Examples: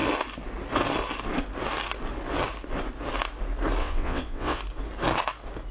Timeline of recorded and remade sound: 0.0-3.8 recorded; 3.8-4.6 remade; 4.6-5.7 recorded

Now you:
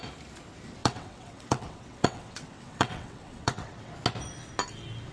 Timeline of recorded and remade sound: 0.0-0.8 recorded; 0.8-3.9 remade; 3.9-5.1 recorded

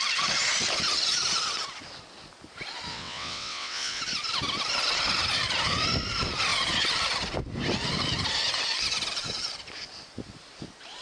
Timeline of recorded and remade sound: 0.0-2.9 recorded; 2.9-4.0 remade; 4.0-11.0 recorded

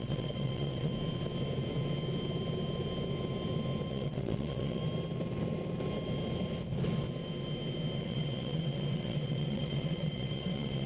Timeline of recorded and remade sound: 0.0-0.9 remade; 0.9-3.9 recorded; 3.9-4.8 remade; 4.8-8.0 recorded; 8.0-10.9 remade